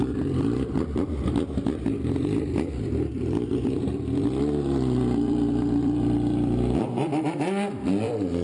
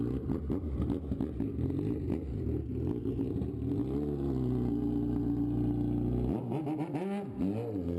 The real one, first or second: second